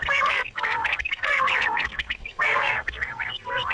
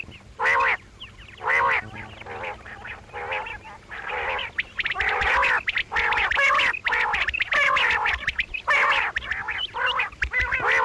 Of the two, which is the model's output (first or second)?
first